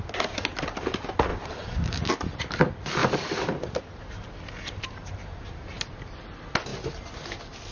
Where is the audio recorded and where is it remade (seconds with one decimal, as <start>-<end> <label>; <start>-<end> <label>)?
0.0-1.3 recorded; 1.3-2.1 remade; 2.1-3.0 recorded; 3.0-6.1 remade; 6.1-7.7 recorded